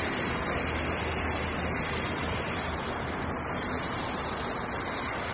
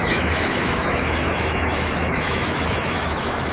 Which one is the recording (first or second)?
first